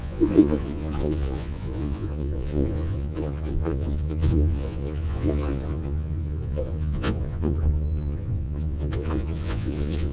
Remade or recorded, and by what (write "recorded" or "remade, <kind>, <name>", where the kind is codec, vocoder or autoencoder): remade, vocoder, Vocos